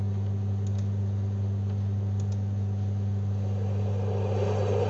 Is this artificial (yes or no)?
no